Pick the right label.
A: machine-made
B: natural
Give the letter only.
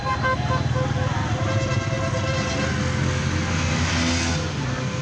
B